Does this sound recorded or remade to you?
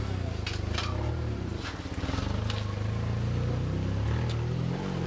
recorded